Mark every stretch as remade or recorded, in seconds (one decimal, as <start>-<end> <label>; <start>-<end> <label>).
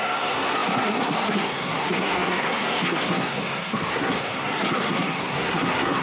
0.0-6.0 remade